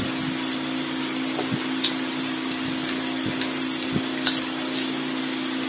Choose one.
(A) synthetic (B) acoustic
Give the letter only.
B